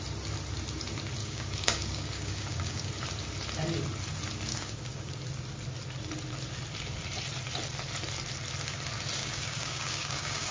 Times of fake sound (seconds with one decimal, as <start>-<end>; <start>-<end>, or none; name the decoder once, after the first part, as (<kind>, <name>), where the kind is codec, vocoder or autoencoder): 1.2-2.9 (codec, DAC); 4.5-5.1; 9.2-10.5